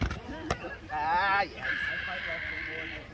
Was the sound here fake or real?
real